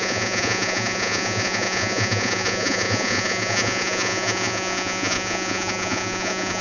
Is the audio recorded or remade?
remade